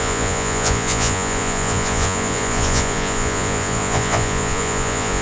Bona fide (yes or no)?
no